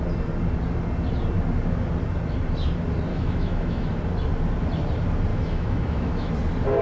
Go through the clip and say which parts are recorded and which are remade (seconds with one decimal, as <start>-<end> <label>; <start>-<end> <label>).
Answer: 0.0-3.1 recorded; 3.1-4.0 remade; 4.0-5.3 recorded; 5.3-6.3 remade; 6.3-6.8 recorded